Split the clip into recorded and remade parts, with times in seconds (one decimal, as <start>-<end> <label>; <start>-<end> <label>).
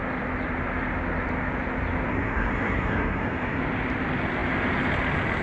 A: 0.0-2.1 recorded; 2.1-3.6 remade; 3.6-5.4 recorded